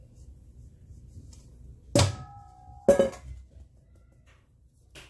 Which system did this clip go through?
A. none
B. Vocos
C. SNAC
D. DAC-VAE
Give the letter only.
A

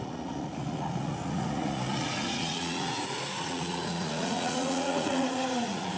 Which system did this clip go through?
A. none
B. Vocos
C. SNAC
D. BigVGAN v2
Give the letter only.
B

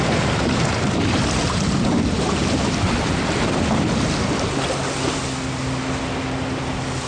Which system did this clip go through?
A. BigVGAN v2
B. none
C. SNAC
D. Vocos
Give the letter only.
B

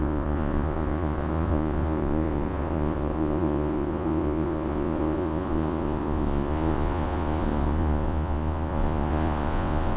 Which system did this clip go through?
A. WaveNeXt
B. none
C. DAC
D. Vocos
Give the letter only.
D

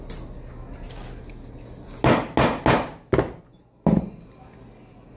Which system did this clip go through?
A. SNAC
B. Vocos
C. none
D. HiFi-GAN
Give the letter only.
C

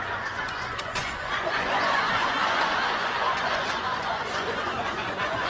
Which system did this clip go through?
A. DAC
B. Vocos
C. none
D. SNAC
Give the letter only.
B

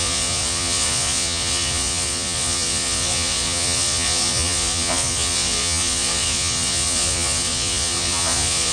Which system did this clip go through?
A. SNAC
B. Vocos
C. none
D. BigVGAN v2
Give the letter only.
B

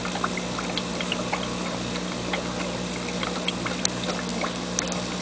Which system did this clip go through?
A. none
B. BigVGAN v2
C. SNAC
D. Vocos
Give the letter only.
A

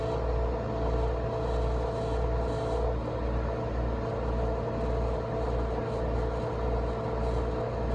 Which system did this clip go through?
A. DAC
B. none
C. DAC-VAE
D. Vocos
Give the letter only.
B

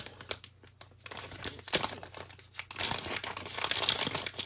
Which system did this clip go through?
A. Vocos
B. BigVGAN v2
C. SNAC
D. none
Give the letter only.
D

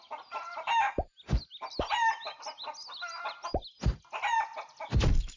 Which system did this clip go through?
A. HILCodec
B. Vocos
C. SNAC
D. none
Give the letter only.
D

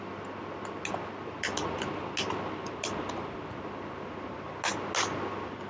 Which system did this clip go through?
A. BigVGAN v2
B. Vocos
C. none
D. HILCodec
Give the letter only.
C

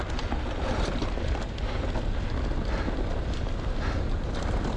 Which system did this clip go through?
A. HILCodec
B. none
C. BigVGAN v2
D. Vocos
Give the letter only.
B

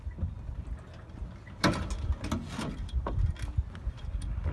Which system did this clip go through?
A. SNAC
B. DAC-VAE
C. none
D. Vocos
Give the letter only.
C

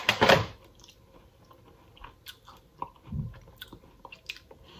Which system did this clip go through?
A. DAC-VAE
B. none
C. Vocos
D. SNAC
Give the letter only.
B